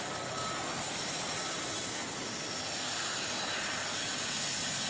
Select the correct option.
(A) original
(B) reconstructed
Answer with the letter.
A